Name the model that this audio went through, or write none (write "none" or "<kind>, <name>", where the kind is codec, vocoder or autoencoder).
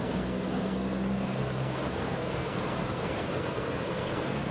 codec, SNAC